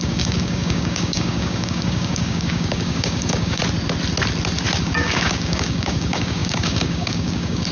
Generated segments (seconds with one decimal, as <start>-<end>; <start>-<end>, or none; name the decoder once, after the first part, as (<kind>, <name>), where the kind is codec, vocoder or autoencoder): 0.0-3.6 (codec, DAC); 4.8-7.7